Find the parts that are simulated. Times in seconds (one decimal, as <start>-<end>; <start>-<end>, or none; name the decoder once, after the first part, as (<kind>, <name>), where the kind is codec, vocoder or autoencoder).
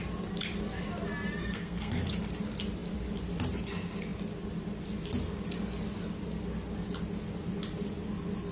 1.4-2.0 (codec, SNAC)